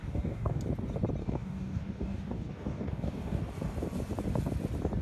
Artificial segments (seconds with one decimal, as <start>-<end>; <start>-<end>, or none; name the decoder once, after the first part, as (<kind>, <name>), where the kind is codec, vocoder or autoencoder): 0.0-0.6 (codec, DAC); 1.2-3.4